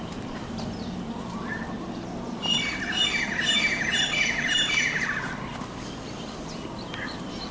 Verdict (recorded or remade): recorded